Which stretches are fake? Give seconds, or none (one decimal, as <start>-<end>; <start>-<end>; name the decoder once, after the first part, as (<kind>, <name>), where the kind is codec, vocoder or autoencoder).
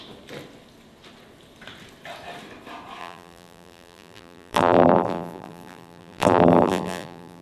3.0-7.4 (vocoder, BigVGAN v2)